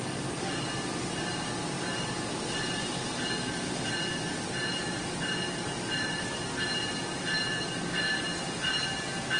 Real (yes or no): yes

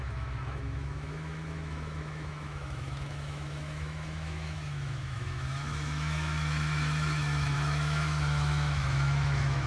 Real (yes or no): no